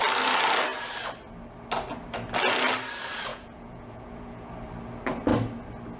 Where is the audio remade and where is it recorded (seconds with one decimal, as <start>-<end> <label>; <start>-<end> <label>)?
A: 0.0-3.3 recorded; 3.3-4.5 remade; 4.5-6.0 recorded